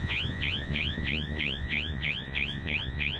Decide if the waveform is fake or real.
fake